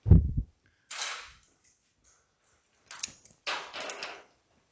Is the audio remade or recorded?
recorded